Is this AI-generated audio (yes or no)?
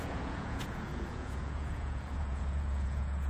yes